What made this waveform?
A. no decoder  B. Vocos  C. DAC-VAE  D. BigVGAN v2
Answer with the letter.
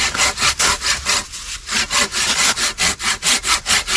A